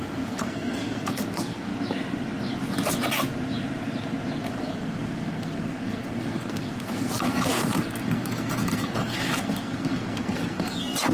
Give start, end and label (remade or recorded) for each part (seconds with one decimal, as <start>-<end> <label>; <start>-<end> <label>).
0.0-1.7 remade; 1.7-4.4 recorded; 4.4-11.1 remade

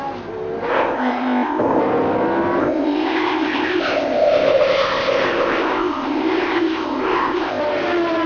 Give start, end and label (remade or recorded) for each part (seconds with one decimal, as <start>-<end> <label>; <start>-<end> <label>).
0.0-0.7 recorded; 0.7-1.8 remade; 1.8-2.6 recorded; 2.6-7.6 remade; 7.6-8.3 recorded

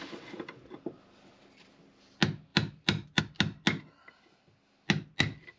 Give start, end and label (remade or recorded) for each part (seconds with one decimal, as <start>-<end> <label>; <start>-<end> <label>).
0.0-2.5 recorded; 2.5-3.2 remade; 3.2-5.6 recorded

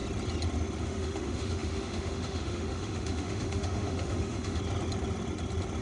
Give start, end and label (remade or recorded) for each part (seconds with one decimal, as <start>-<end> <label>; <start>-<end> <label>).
0.0-0.8 recorded; 0.8-4.6 remade; 4.6-5.8 recorded

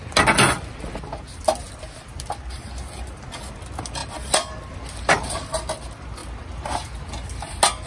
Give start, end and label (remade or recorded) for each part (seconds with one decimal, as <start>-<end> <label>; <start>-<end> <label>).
0.0-7.9 recorded

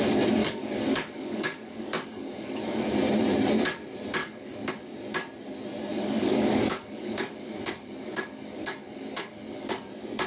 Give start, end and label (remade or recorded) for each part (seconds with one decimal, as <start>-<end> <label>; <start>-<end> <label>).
0.0-0.4 recorded; 0.4-2.9 remade; 2.9-4.2 recorded; 4.2-4.7 remade; 4.7-5.9 recorded; 5.9-9.8 remade; 9.8-10.3 recorded

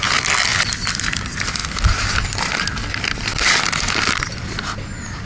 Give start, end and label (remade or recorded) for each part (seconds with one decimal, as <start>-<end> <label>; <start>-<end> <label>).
0.0-5.3 recorded